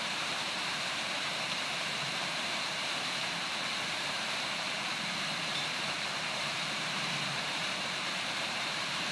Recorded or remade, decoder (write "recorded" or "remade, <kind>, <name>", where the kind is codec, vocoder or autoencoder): remade, vocoder, BigVGAN v2